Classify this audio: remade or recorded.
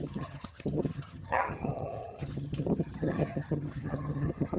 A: remade